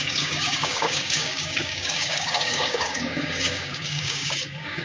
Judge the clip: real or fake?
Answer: fake